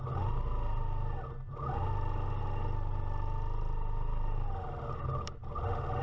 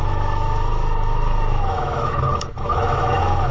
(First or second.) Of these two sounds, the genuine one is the first